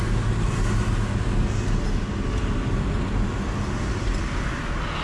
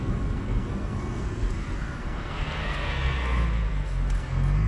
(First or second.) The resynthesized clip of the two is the second